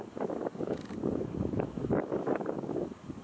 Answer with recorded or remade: remade